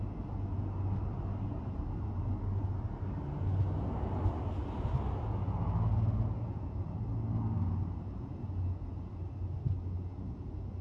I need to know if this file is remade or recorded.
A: recorded